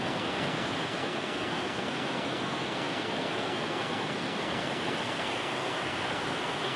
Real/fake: fake